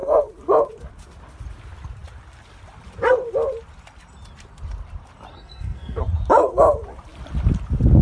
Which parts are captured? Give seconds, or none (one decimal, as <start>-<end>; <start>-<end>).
0.0-5.3; 6.0-8.0